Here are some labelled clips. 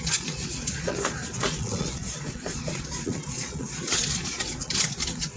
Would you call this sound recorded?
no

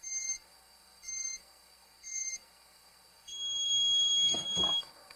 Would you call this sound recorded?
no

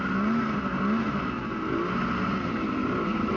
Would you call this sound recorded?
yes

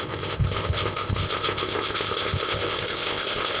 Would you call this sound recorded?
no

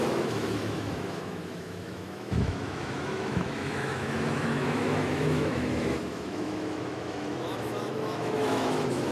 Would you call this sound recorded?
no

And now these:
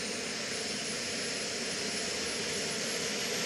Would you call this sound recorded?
yes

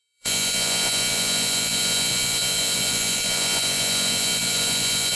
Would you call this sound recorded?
no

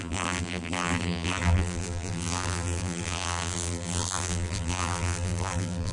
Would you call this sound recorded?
no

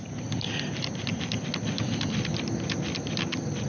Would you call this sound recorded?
yes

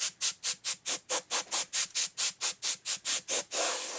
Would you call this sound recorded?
yes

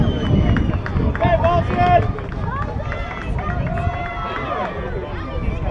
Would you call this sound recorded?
yes